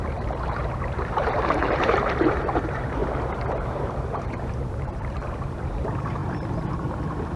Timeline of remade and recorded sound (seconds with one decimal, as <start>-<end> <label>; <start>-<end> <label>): 0.0-3.0 remade; 3.0-3.5 recorded; 3.5-7.4 remade